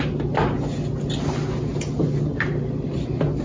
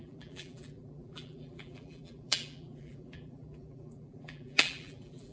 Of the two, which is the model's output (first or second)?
second